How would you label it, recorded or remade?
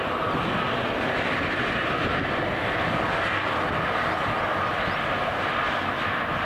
recorded